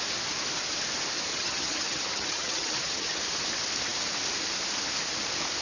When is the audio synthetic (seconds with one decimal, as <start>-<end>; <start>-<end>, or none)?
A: 1.3-3.2